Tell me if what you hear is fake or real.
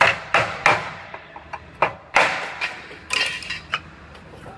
real